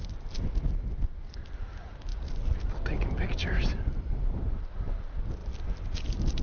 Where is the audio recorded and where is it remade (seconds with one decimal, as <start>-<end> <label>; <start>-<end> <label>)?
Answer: 0.0-6.4 recorded